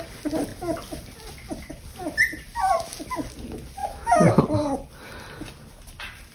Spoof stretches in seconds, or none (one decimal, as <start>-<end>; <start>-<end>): 3.8-4.4